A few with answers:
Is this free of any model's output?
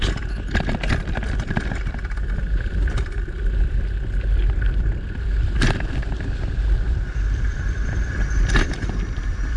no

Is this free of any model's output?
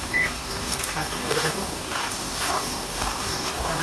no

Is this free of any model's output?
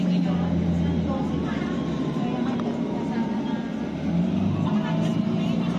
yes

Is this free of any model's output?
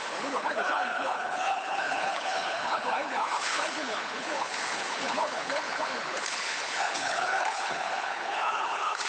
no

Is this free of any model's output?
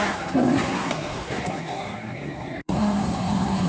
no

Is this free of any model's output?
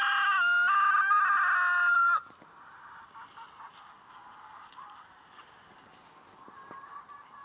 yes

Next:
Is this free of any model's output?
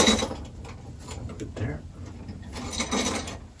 yes